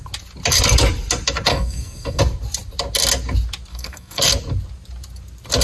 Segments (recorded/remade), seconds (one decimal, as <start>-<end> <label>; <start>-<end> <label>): 0.0-1.5 recorded; 1.5-2.2 remade; 2.2-3.7 recorded; 3.7-4.2 remade; 4.2-5.6 recorded